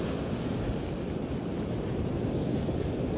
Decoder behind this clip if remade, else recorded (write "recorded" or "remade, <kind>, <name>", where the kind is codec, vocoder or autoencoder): recorded